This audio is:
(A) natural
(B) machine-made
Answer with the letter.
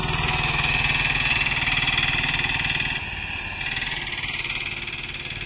A